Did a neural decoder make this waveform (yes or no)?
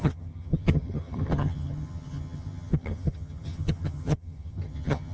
yes